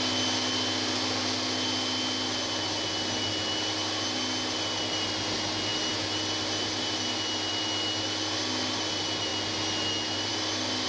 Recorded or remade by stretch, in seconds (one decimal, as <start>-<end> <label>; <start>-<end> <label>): 0.0-10.9 recorded